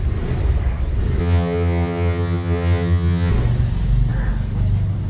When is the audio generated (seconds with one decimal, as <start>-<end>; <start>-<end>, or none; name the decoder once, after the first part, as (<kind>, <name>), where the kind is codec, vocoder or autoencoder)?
1.2-3.3 (vocoder, HiFi-GAN)